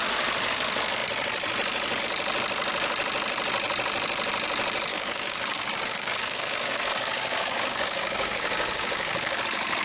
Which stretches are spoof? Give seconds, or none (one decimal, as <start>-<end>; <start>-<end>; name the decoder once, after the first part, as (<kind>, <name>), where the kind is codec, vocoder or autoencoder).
4.9-9.4 (codec, DAC)